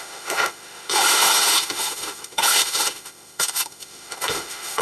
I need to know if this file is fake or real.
fake